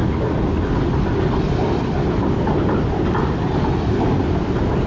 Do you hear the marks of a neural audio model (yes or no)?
no